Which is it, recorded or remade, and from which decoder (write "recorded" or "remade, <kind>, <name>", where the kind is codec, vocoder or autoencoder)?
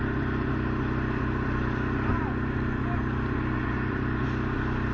recorded